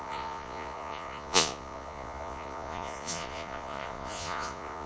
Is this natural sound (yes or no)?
no